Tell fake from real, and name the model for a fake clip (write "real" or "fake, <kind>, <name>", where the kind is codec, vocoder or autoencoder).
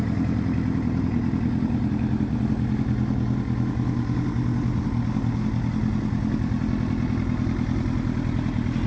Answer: real